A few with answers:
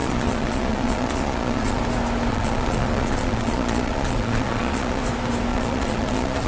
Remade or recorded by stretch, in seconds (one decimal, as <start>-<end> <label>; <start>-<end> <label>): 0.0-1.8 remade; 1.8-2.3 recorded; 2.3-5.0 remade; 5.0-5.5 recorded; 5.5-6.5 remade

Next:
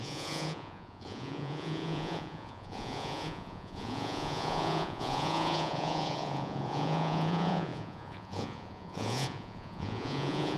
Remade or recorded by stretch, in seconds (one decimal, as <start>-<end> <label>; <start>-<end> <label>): 0.0-10.6 remade

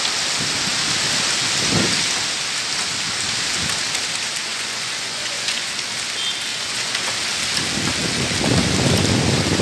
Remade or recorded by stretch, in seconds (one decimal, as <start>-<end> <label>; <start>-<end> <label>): 0.0-4.5 recorded; 4.5-5.7 remade; 5.7-6.5 recorded; 6.5-7.1 remade; 7.1-9.6 recorded

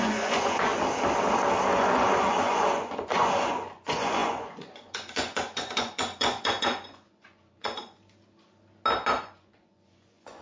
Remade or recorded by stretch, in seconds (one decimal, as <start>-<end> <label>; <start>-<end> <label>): 0.0-0.7 remade; 0.7-1.7 recorded; 1.7-8.0 remade; 8.0-9.1 recorded; 9.1-10.4 remade

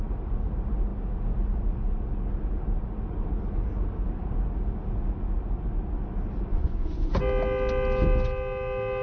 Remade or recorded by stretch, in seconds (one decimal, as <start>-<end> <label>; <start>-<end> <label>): 0.0-6.5 recorded; 6.5-7.2 remade; 7.2-9.0 recorded

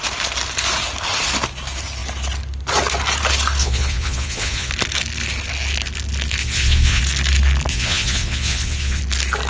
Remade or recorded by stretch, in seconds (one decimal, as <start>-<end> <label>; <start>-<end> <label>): 0.0-3.6 recorded; 3.6-4.7 remade; 4.7-6.4 recorded; 6.4-7.0 remade; 7.0-7.7 recorded; 7.7-9.0 remade; 9.0-9.5 recorded

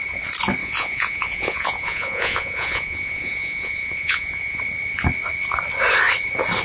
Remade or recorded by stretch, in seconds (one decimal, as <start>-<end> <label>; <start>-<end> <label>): 0.0-0.6 recorded; 0.6-4.6 remade; 4.6-6.6 recorded

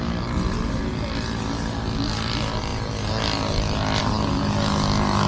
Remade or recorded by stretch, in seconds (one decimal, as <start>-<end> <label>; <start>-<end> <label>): 0.0-5.3 recorded